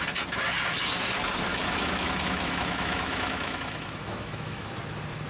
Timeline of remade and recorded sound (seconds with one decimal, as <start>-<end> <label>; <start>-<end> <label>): 0.0-1.5 recorded; 1.5-4.7 remade; 4.7-5.3 recorded